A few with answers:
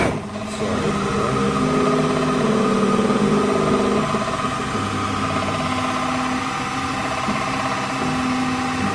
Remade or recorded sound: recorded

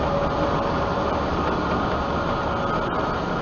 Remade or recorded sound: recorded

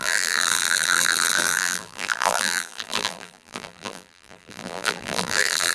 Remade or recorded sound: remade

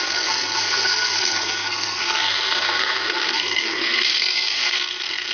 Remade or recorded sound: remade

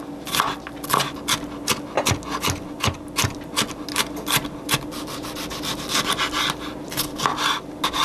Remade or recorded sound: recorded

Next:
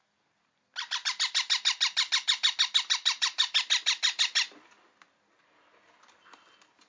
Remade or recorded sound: recorded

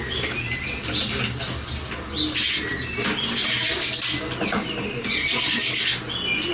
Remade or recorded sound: recorded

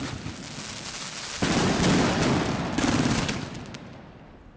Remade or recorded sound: recorded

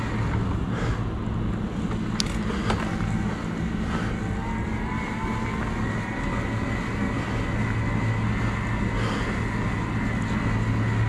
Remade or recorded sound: recorded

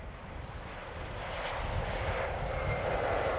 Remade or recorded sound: recorded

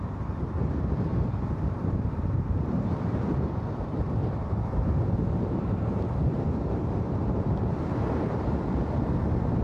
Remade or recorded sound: remade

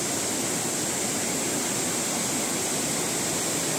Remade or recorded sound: recorded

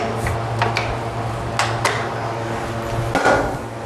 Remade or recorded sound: recorded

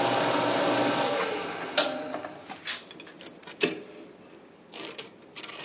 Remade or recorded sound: recorded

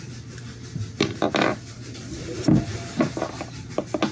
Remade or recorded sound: recorded